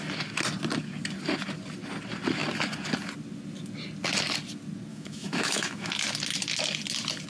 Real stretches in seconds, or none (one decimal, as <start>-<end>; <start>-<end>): 0.0-4.9; 5.9-7.3